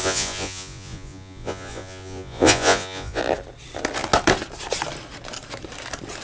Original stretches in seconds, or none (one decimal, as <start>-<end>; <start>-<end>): 3.2-6.2